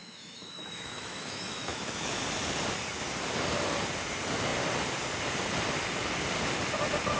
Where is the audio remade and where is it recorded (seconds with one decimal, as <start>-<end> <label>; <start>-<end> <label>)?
0.0-2.1 remade; 2.1-7.2 recorded